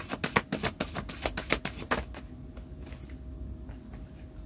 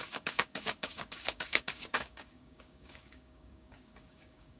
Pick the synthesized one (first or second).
second